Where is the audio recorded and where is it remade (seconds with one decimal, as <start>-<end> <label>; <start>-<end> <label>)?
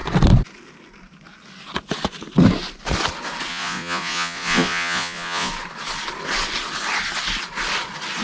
0.0-3.5 recorded; 3.5-5.5 remade; 5.5-8.2 recorded